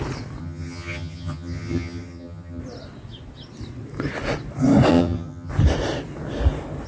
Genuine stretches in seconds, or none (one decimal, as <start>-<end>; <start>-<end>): 0.0-0.4; 2.6-4.9; 5.5-6.9